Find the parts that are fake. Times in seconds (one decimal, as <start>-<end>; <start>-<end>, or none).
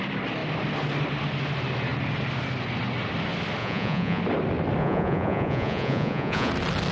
3.6-4.2; 4.8-6.5